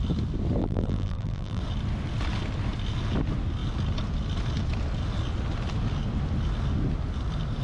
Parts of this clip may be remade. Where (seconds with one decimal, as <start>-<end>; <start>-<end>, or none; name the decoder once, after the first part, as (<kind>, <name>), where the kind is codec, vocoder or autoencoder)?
0.6-1.6 (vocoder, BigVGAN v2)